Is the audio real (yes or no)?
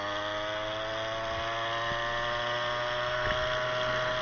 yes